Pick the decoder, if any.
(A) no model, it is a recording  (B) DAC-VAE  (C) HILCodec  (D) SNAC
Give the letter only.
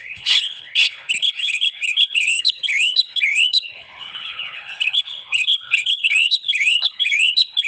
C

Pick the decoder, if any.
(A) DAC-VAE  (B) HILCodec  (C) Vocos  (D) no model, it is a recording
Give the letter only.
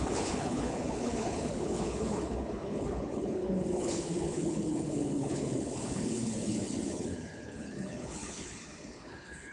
B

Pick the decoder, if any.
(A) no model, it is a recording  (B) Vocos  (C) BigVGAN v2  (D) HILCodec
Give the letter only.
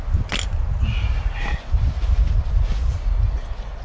A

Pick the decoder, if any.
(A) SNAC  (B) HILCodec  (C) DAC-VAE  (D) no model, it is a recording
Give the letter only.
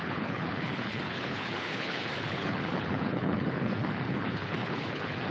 B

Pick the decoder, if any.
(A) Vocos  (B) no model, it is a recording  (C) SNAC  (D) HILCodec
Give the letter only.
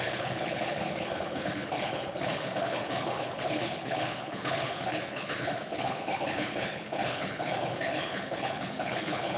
D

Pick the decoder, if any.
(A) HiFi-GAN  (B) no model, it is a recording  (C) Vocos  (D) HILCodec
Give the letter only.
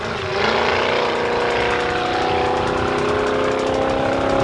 B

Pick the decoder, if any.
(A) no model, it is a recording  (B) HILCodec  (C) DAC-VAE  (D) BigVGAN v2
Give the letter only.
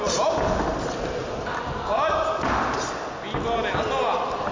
A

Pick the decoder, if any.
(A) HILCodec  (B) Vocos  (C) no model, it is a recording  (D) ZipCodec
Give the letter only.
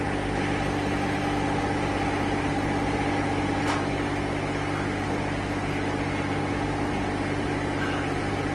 C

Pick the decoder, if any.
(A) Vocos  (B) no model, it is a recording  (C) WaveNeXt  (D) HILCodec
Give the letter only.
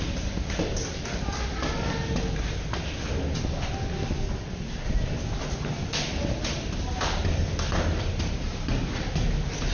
B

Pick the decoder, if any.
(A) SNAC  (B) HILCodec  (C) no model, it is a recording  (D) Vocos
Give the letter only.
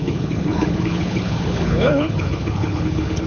B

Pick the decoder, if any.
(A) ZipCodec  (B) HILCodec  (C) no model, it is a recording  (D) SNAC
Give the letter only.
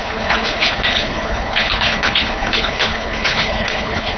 B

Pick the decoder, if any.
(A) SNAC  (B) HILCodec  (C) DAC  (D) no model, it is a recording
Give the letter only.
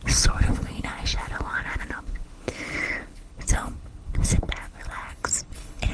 B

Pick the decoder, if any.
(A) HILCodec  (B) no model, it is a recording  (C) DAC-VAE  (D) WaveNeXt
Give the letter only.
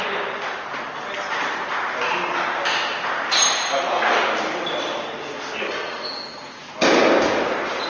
B